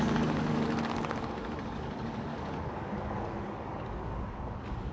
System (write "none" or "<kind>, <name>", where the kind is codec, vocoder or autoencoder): codec, DAC